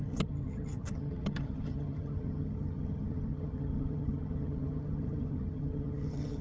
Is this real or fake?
fake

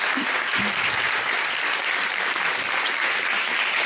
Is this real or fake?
fake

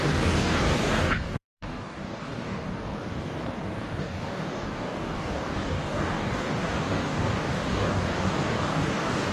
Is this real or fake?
fake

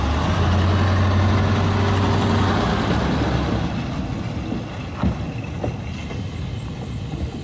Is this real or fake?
real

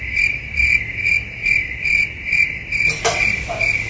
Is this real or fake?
real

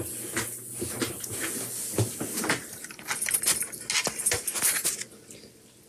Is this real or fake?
real